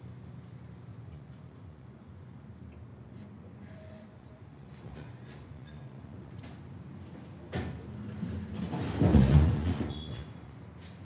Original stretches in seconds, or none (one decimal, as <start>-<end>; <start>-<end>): 0.0-0.9; 2.5-2.9; 6.4-9.1; 10.6-11.0